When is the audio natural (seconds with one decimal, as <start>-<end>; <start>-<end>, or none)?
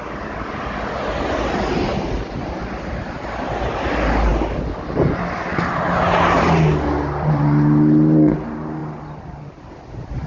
0.0-10.3